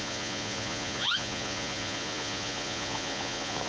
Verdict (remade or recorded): remade